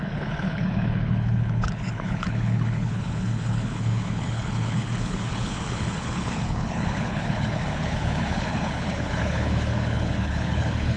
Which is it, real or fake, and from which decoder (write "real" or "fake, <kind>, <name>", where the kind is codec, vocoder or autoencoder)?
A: fake, codec, HILCodec